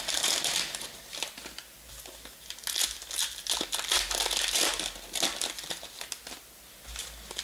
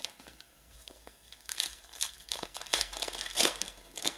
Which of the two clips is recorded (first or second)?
first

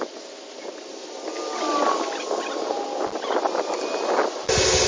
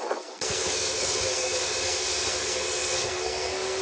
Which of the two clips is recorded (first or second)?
first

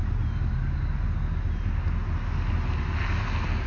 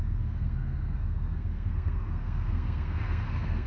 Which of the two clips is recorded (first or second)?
first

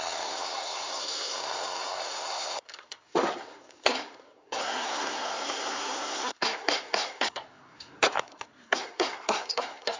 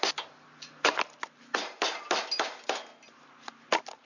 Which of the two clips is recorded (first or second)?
second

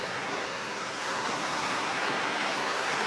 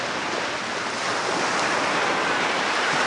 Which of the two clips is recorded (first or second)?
second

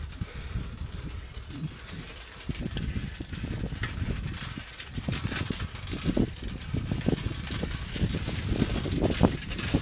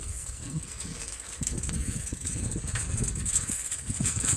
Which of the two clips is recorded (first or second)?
first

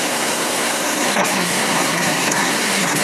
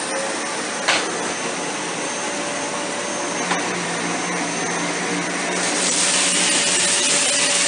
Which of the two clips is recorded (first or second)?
second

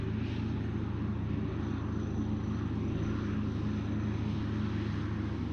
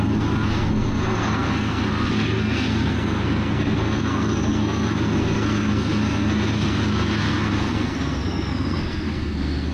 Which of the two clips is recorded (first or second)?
first